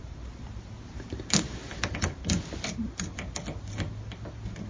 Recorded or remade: recorded